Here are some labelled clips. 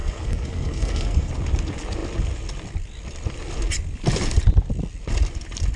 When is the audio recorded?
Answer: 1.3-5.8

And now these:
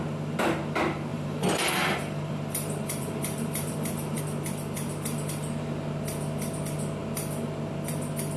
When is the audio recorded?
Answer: 0.0-1.1; 4.2-8.4

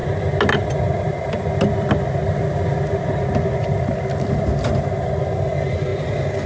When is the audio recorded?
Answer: 0.0-6.5

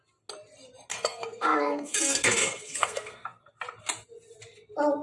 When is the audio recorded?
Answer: 0.0-0.9; 3.4-5.0

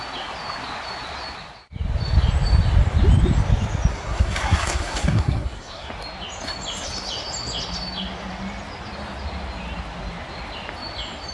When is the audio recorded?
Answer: 0.0-3.9; 5.9-11.3

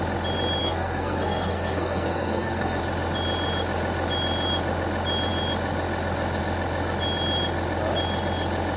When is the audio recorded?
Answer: 0.0-0.6; 2.8-8.8

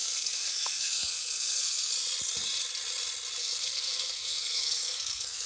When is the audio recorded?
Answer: 1.9-3.4

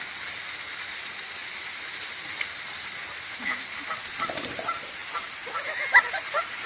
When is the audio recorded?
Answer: 0.0-6.7